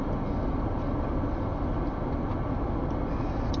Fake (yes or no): no